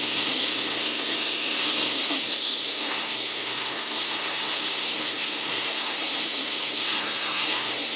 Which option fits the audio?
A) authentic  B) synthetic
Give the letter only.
B